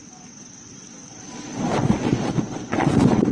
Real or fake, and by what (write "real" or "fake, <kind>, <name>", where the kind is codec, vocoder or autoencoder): fake, vocoder, Vocos